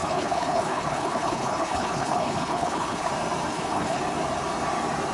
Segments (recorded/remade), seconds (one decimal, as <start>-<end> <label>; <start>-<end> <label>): 0.0-3.1 remade; 3.1-3.5 recorded; 3.5-4.0 remade; 4.0-5.1 recorded